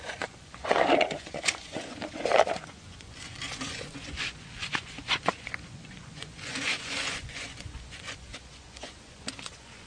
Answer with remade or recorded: remade